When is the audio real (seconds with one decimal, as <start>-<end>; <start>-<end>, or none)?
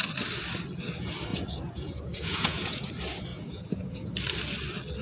0.0-1.3; 2.9-3.3; 4.1-5.0